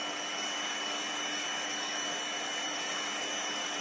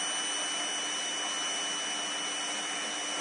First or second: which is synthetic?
first